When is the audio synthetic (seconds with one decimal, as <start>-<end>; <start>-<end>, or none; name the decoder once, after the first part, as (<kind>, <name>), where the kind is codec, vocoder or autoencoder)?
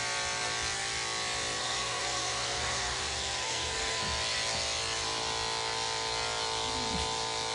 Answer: 1.6-4.0 (codec, SNAC)